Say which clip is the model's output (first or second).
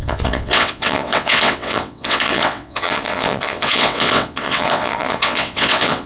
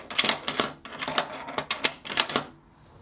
first